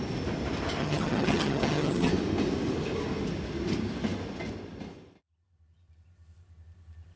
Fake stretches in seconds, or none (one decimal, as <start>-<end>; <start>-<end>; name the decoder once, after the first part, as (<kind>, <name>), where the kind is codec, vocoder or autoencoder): 0.8-2.1 (vocoder, HiFi-GAN)

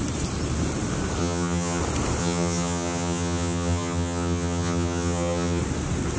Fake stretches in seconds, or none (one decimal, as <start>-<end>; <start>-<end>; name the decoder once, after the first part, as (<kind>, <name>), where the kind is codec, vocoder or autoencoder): 1.2-1.8 (vocoder, HiFi-GAN); 2.2-5.6

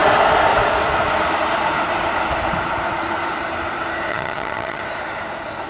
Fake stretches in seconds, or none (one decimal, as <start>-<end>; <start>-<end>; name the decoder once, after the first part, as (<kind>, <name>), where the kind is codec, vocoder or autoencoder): 4.1-4.8 (vocoder, HiFi-GAN)

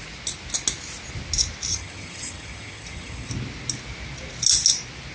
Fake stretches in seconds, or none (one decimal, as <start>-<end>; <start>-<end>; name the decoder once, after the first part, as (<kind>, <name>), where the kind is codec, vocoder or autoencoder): 1.7-3.3 (vocoder, HiFi-GAN)

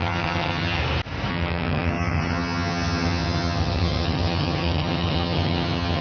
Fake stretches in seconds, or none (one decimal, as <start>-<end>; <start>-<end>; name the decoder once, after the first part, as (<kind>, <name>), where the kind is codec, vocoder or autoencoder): 0.0-0.8 (vocoder, HiFi-GAN); 1.3-6.0

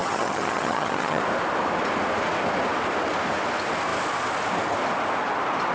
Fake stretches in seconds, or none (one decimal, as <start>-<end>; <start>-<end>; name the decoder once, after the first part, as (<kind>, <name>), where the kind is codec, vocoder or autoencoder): 0.0-1.2 (vocoder, HiFi-GAN)

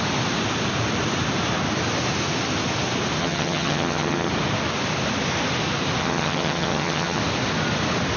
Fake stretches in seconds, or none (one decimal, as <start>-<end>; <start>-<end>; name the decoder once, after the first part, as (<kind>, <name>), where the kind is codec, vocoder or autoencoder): 3.2-4.3 (vocoder, HiFi-GAN); 6.0-7.2